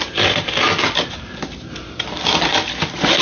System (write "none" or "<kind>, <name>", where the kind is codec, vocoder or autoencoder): none